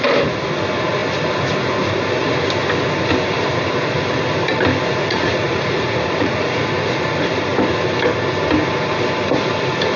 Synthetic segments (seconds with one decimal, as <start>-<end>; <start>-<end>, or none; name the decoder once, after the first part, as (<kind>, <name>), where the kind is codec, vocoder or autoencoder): 5.0-6.7 (vocoder, Vocos)